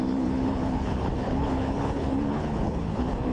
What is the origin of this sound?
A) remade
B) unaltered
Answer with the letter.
A